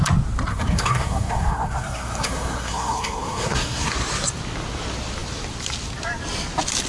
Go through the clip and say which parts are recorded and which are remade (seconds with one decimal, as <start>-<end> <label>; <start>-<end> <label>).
0.0-0.5 recorded; 0.5-3.9 remade; 3.9-6.9 recorded